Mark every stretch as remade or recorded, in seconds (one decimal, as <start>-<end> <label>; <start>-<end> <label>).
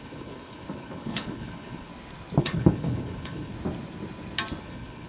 0.0-1.9 remade; 1.9-2.4 recorded; 2.4-3.5 remade; 3.5-4.6 recorded; 4.6-5.1 remade